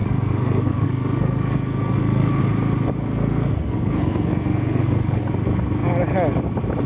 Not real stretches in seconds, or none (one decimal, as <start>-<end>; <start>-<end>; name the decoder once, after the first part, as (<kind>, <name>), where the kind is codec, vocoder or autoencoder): 0.0-2.4 (codec, SNAC); 3.0-5.3